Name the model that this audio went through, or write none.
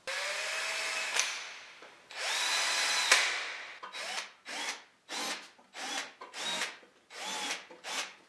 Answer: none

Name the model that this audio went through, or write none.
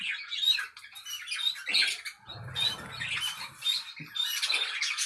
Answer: none